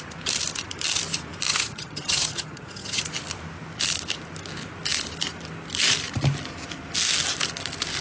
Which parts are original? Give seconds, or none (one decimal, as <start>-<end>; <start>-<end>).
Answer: 0.0-1.5; 3.0-8.0